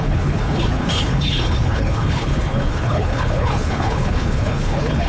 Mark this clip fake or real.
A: fake